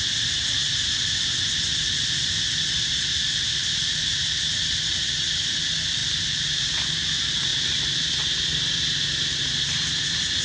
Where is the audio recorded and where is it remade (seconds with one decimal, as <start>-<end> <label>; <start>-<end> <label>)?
0.0-3.0 recorded; 3.0-4.2 remade; 4.2-6.0 recorded; 6.0-6.9 remade; 6.9-10.4 recorded